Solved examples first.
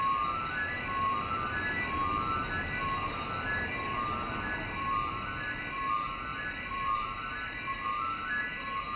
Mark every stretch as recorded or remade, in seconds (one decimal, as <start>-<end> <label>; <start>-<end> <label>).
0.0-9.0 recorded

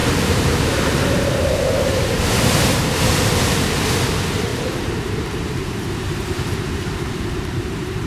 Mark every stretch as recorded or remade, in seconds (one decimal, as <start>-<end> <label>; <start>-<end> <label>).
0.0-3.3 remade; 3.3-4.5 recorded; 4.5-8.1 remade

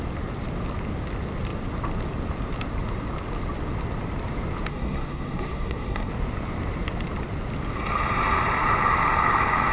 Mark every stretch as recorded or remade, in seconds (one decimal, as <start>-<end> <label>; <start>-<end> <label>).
0.0-4.7 recorded; 4.7-6.1 remade; 6.1-9.7 recorded

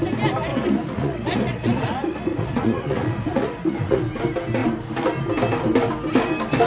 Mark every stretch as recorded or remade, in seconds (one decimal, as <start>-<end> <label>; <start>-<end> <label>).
0.0-0.5 recorded; 0.5-4.0 remade; 4.0-6.7 recorded

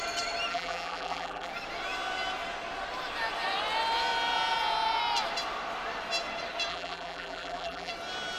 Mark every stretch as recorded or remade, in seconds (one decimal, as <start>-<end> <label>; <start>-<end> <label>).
0.0-0.5 recorded; 0.5-1.5 remade; 1.5-6.7 recorded; 6.7-7.9 remade; 7.9-8.4 recorded